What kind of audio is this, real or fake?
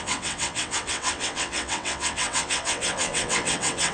fake